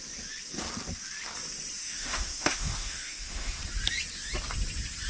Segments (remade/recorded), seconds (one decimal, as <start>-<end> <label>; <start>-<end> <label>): 0.0-1.8 recorded; 1.8-3.6 remade; 3.6-5.1 recorded